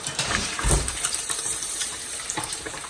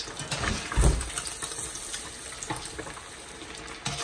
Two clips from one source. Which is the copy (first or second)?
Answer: first